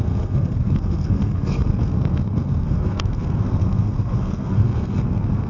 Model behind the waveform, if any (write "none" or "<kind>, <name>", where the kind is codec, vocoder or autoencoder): codec, SNAC